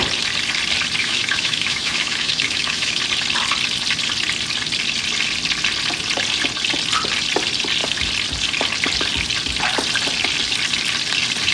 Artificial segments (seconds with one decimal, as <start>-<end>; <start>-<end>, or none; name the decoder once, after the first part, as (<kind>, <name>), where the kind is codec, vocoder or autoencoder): 1.0-3.0 (autoencoder, DAC-VAE)